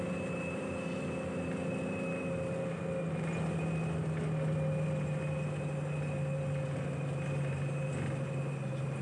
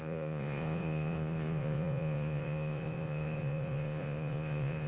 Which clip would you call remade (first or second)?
second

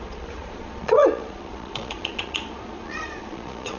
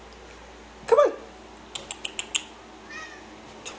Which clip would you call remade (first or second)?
first